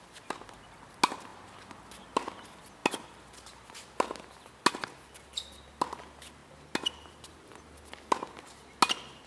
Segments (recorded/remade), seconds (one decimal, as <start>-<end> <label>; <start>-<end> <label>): 0.0-9.3 recorded